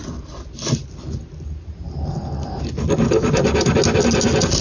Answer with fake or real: real